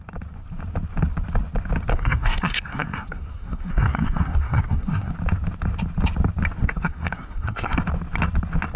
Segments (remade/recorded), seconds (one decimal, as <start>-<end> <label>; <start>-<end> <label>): 0.0-1.9 recorded; 1.9-5.1 remade; 5.1-6.6 recorded; 6.6-7.8 remade; 7.8-8.8 recorded